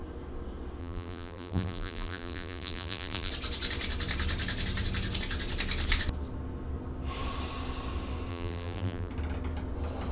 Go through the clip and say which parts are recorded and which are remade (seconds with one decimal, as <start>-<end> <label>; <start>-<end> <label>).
0.0-0.8 recorded; 0.8-3.3 remade; 3.3-8.3 recorded; 8.3-9.1 remade; 9.1-10.1 recorded